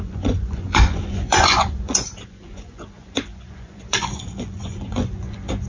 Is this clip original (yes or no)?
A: no